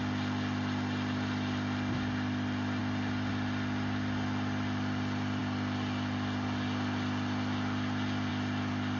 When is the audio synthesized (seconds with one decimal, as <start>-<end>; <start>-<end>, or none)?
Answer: none